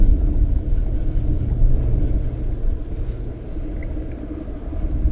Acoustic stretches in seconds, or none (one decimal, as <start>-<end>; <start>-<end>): 0.0-5.1